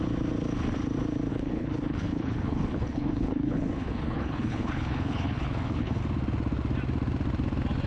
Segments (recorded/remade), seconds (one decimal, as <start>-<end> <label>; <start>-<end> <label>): 0.0-1.3 recorded; 1.3-6.0 remade; 6.0-7.9 recorded